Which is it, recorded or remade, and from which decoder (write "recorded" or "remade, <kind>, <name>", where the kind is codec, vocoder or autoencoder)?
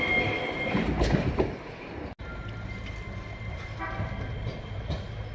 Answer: recorded